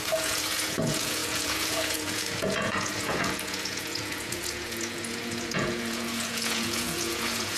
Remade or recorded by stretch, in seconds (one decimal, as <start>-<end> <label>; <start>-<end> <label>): 0.0-7.6 remade